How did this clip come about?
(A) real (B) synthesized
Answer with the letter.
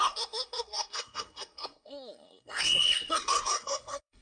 B